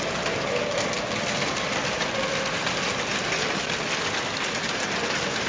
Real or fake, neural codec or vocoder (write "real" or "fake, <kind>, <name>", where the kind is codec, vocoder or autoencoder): real